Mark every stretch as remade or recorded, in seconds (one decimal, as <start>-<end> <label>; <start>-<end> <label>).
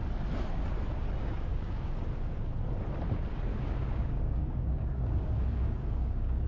0.0-1.2 recorded; 1.2-2.0 remade; 2.0-3.5 recorded; 3.5-6.5 remade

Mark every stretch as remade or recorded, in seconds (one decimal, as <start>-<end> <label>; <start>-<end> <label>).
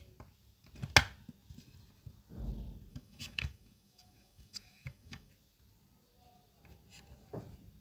0.0-2.9 recorded; 2.9-5.3 remade; 5.3-7.8 recorded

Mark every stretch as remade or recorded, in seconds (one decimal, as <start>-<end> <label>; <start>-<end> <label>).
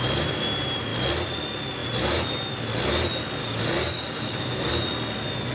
0.0-3.4 recorded; 3.4-4.7 remade; 4.7-5.5 recorded